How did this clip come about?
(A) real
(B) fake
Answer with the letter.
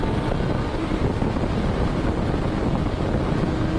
A